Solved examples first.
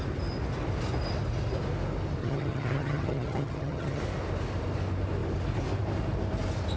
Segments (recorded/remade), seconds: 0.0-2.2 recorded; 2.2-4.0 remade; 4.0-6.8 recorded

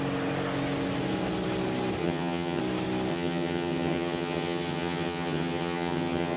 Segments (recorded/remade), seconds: 0.0-2.0 recorded; 2.0-2.6 remade; 2.6-3.1 recorded; 3.1-6.4 remade

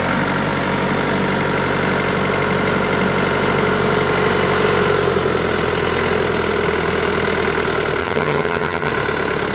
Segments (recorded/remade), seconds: 0.0-8.0 recorded; 8.0-8.9 remade; 8.9-9.5 recorded

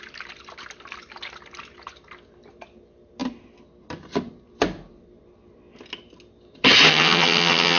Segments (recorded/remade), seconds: 0.0-6.9 recorded; 6.9-7.8 remade